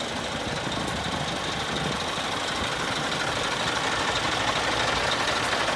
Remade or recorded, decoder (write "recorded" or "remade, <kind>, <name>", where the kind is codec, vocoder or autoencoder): recorded